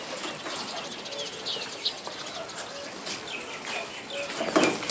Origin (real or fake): real